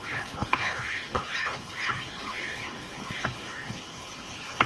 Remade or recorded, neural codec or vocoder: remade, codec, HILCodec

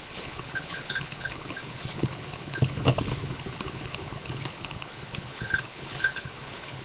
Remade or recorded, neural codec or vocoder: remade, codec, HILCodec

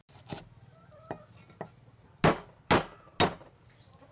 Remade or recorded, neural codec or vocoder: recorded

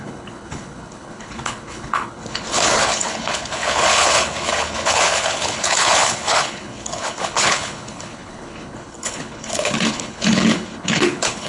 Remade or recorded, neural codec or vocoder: remade, codec, HILCodec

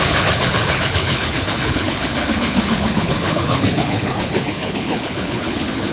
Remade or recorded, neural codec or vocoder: remade, codec, HILCodec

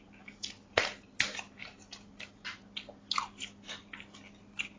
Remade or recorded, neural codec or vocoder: recorded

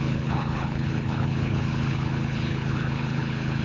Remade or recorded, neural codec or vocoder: remade, codec, HILCodec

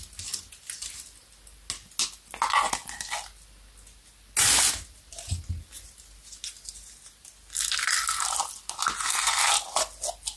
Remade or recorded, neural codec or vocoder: recorded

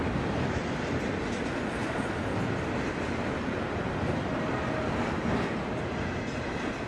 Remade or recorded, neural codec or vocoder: recorded